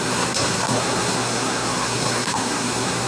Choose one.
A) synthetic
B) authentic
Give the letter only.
A